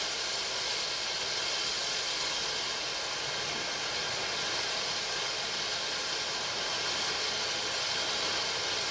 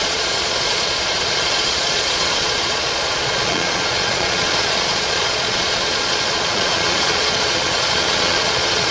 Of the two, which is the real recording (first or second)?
first